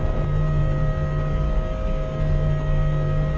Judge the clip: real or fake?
real